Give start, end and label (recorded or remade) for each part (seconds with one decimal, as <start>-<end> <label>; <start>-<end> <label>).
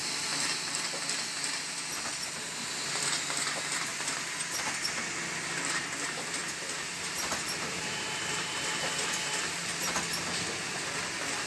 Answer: 0.0-3.9 recorded; 3.9-4.6 remade; 4.6-6.4 recorded; 6.4-9.9 remade; 9.9-11.5 recorded